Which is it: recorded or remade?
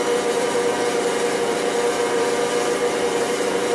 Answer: remade